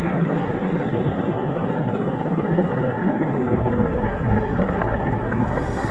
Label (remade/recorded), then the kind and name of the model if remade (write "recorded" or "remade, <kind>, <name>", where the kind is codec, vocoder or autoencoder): remade, codec, SNAC